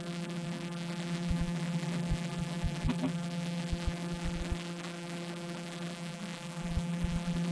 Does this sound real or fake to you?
fake